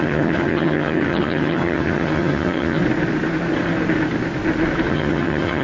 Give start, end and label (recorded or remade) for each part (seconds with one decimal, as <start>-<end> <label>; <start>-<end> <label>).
0.0-2.8 remade; 2.8-4.9 recorded; 4.9-5.6 remade